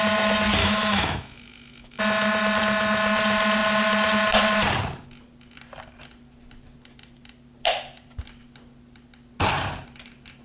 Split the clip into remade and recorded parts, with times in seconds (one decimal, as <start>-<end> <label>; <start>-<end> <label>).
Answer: 0.0-0.6 recorded; 0.6-2.0 remade; 2.0-10.4 recorded